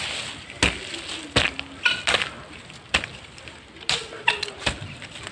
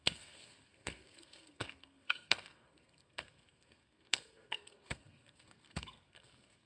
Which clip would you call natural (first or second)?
first